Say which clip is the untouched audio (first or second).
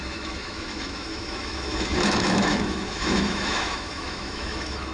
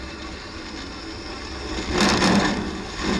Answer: second